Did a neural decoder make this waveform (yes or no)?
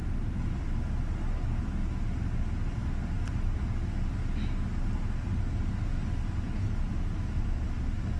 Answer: no